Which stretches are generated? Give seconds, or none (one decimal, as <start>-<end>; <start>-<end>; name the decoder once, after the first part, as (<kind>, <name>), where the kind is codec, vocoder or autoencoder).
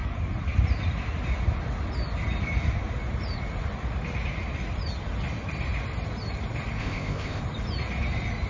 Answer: 6.8-7.4 (codec, ZipCodec)